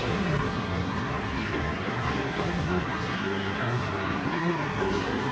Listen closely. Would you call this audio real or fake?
fake